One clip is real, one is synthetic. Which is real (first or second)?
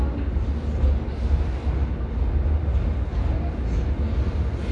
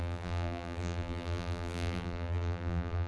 first